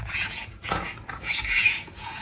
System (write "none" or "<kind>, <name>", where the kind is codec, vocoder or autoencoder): vocoder, Vocos